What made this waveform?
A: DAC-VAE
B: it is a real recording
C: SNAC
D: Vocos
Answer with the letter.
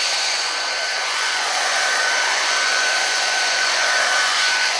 D